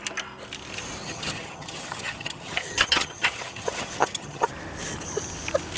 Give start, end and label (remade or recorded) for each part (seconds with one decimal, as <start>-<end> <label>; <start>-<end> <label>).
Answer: 0.0-1.0 recorded; 1.0-4.5 remade; 4.5-5.8 recorded